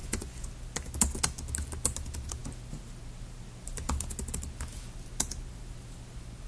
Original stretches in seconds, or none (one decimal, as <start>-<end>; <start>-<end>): 0.5-6.5